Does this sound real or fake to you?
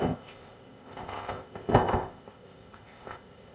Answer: fake